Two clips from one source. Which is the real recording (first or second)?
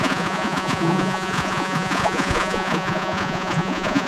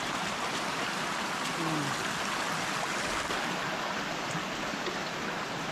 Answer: second